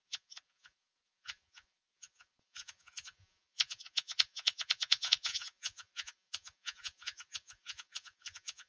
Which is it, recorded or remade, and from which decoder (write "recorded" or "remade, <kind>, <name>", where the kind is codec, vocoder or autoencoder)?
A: remade, vocoder, Vocos